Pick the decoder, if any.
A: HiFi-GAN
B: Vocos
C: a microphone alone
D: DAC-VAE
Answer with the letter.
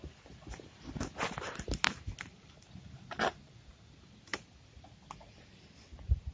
C